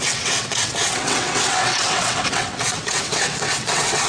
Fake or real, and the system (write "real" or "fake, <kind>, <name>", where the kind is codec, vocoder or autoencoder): fake, vocoder, WaveNeXt